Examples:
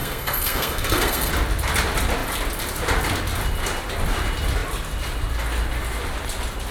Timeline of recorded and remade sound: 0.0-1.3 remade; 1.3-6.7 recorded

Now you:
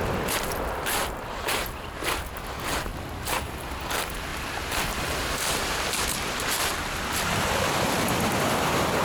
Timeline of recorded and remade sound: 0.0-2.9 recorded; 2.9-3.5 remade; 3.5-4.3 recorded; 4.3-8.2 remade; 8.2-9.0 recorded

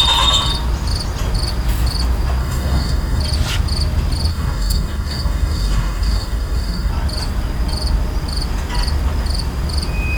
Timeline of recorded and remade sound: 0.0-2.4 recorded; 2.4-3.2 remade; 3.2-4.3 recorded; 4.3-6.9 remade; 6.9-10.2 recorded

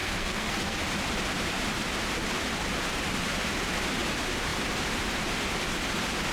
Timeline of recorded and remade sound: 0.0-0.8 remade; 0.8-6.3 recorded

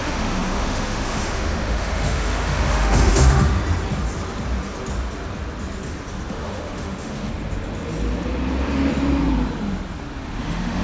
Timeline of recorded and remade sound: 0.0-3.6 remade; 3.6-6.3 recorded; 6.3-7.3 remade; 7.3-10.4 recorded; 10.4-10.8 remade

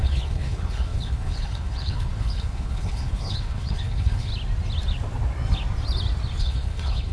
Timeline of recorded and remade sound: 0.0-4.3 remade; 4.3-6.4 recorded; 6.4-7.1 remade

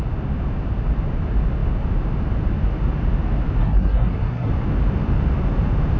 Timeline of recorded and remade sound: 0.0-3.6 recorded; 3.6-4.5 remade; 4.5-6.0 recorded